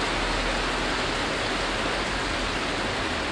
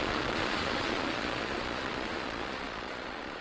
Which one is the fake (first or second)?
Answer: second